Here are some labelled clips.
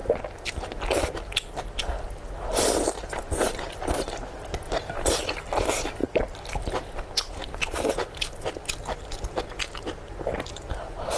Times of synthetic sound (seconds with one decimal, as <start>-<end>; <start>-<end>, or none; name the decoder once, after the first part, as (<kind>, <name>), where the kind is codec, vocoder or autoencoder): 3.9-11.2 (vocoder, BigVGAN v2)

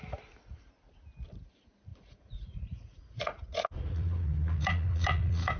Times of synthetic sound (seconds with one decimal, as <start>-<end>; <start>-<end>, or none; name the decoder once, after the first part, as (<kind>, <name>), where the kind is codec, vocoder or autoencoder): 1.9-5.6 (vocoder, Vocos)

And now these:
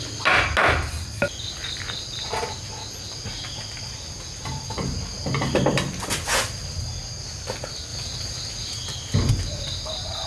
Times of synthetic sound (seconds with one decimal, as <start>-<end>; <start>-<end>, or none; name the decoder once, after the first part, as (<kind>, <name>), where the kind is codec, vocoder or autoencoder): none